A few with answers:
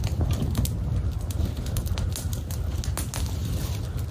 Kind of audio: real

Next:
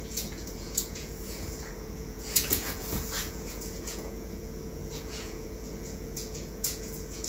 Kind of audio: fake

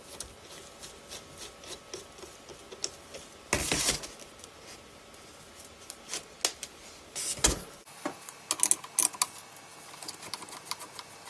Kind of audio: real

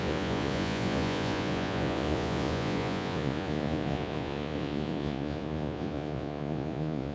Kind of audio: fake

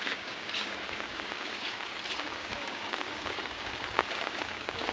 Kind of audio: fake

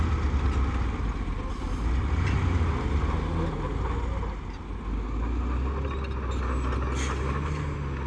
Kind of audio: real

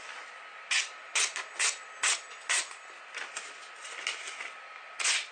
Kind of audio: real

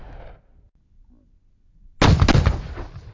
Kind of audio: real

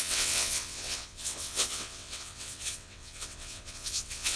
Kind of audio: fake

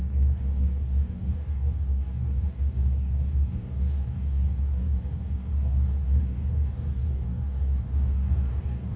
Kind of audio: fake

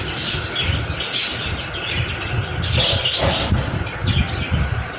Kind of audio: real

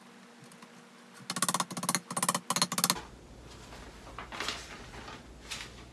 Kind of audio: real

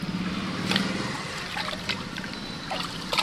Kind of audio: fake